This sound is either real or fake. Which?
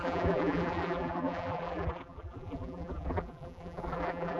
fake